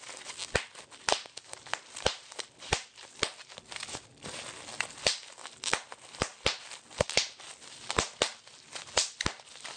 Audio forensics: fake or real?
real